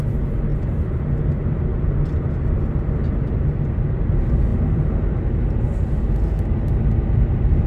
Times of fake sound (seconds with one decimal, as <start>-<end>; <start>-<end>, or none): 1.7-4.0